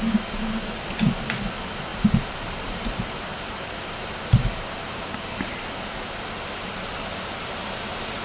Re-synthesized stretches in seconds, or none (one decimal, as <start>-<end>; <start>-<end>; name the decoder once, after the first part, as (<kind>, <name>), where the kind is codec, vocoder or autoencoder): 1.9-6.0 (vocoder, BigVGAN v2)